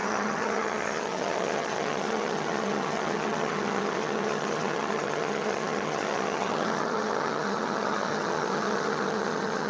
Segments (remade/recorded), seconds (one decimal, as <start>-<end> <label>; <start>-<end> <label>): 0.0-9.7 remade